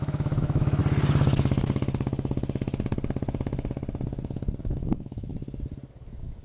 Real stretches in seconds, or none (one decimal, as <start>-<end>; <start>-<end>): 0.8-4.6; 5.3-6.0